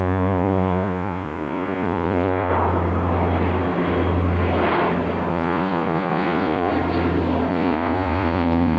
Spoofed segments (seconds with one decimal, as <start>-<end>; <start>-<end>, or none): 0.0-2.5; 5.3-6.7; 7.5-8.8